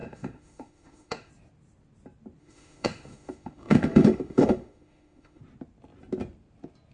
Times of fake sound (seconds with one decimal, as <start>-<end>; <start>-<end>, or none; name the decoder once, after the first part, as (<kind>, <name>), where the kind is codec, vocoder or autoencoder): 0.0-1.3 (autoencoder, DAC-VAE); 2.4-5.4